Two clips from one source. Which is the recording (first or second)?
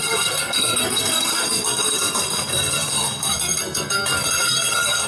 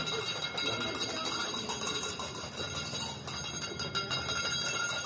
second